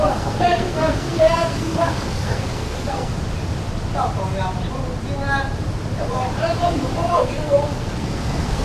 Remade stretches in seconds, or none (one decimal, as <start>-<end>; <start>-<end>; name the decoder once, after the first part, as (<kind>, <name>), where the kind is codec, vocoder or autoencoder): 0.0-3.1 (codec, SNAC); 7.1-8.6